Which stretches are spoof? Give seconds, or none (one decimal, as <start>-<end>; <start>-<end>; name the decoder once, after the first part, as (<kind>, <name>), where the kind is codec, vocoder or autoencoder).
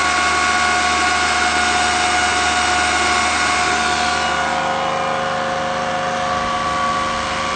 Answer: none